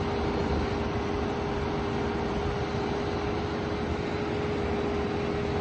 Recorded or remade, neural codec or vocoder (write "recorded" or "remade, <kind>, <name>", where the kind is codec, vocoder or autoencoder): recorded